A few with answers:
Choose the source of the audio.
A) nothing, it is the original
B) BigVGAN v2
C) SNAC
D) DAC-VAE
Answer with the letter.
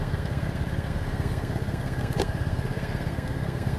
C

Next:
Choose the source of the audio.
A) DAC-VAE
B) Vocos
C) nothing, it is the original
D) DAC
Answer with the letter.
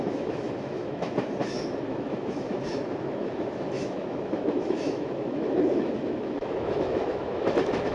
A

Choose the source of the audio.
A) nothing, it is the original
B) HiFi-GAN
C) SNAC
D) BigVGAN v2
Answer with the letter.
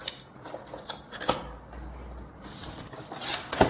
A